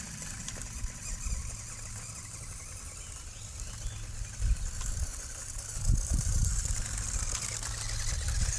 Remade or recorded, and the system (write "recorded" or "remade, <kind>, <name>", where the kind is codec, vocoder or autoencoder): recorded